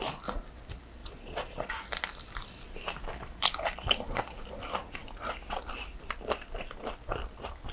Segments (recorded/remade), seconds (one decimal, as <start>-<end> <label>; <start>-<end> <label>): 0.0-1.0 recorded; 1.0-1.7 remade; 1.7-7.7 recorded